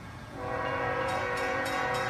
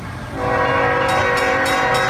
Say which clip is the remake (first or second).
first